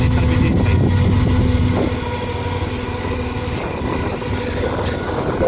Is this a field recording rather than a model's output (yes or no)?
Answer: yes